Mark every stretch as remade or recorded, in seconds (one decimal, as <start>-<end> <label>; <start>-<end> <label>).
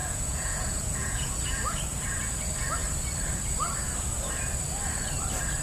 0.0-1.3 remade; 1.3-5.6 recorded